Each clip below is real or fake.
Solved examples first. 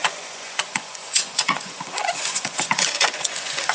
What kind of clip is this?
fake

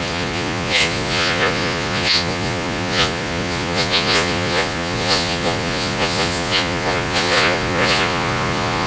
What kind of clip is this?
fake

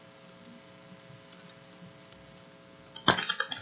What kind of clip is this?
real